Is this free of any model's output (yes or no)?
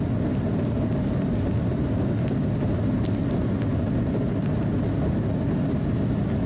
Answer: yes